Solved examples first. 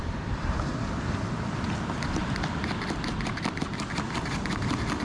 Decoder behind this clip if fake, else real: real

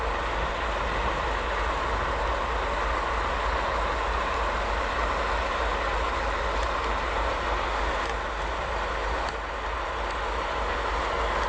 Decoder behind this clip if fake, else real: real